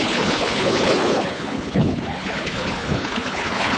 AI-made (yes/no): yes